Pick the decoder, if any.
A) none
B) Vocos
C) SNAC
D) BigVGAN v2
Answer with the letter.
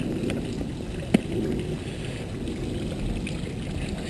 A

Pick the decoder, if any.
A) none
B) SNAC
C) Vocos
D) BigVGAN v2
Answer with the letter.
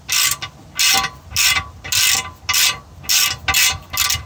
A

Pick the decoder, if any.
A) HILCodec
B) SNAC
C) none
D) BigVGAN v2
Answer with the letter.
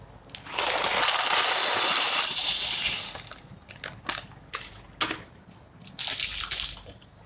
C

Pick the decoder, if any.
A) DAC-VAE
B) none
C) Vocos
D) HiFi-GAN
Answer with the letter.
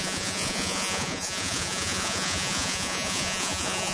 C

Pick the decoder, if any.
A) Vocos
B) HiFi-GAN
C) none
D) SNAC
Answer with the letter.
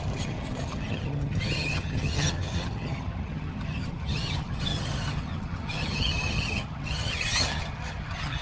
B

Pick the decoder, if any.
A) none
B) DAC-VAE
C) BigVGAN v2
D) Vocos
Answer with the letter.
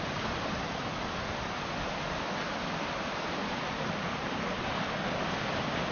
C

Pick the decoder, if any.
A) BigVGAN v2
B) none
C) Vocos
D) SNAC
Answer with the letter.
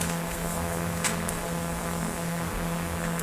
D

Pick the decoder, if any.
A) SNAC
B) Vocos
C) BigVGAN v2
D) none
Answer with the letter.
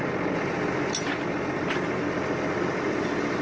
D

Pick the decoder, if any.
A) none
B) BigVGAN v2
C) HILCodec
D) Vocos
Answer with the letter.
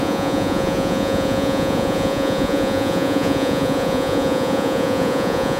D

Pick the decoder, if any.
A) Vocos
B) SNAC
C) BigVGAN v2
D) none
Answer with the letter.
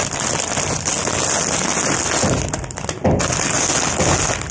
D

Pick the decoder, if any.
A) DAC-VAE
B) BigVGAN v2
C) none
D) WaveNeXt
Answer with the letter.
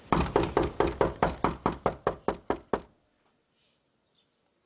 C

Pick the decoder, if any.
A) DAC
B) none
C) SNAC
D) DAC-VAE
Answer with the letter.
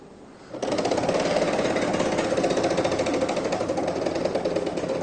B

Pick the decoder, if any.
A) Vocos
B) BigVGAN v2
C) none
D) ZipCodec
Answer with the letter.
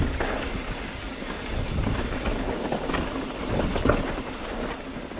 C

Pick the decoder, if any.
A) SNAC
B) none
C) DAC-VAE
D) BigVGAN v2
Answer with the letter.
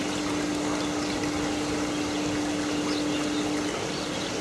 B